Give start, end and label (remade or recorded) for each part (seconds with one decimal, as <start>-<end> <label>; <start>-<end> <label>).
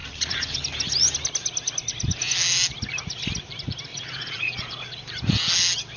0.0-0.6 remade; 0.6-3.9 recorded; 3.9-5.0 remade; 5.0-6.0 recorded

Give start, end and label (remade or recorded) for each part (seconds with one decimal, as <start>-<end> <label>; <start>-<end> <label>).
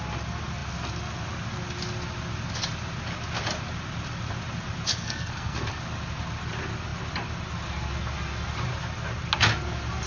0.0-4.9 recorded; 4.9-5.7 remade; 5.7-10.1 recorded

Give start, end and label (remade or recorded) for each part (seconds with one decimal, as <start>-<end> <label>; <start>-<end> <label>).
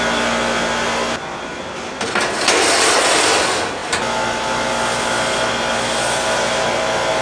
0.0-7.2 recorded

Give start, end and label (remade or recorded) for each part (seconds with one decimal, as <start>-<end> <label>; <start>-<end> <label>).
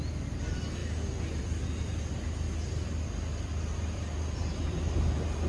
0.0-5.5 recorded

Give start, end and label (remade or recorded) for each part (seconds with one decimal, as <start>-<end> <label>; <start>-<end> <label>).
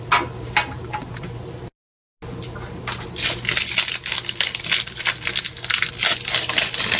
0.0-7.0 recorded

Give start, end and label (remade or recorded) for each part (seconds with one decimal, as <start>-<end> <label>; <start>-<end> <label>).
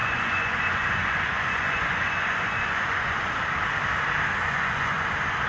0.0-3.3 remade; 3.3-4.4 recorded; 4.4-5.1 remade; 5.1-5.5 recorded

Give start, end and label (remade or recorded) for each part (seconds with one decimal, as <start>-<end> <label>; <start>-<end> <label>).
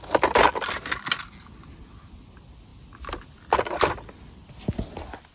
0.0-5.3 recorded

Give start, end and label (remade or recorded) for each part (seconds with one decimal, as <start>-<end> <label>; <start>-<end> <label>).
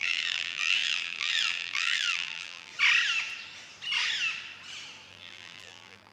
0.0-2.7 remade; 2.7-5.1 recorded; 5.1-6.1 remade